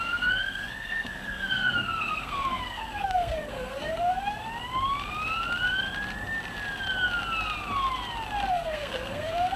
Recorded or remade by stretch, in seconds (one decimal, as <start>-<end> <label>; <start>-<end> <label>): 0.0-4.4 remade; 4.4-8.5 recorded; 8.5-9.6 remade

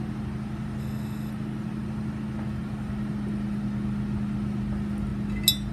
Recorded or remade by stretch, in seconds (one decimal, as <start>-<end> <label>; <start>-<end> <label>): 0.0-0.8 recorded; 0.8-1.3 remade; 1.3-5.7 recorded

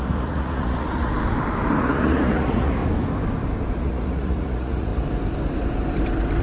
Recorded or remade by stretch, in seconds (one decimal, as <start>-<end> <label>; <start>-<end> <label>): 0.0-1.1 remade; 1.1-1.8 recorded; 1.8-2.8 remade; 2.8-3.8 recorded; 3.8-4.9 remade; 4.9-6.4 recorded

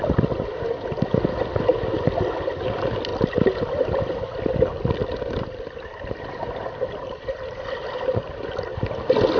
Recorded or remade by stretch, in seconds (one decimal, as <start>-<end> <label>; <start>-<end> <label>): 0.0-9.4 recorded

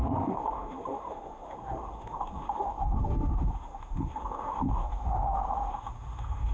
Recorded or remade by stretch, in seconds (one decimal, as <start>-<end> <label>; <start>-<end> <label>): 0.0-6.5 remade